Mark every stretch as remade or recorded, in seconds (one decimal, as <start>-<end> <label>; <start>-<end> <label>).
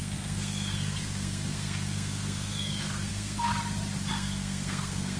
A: 0.0-3.5 remade; 3.5-4.1 recorded; 4.1-5.2 remade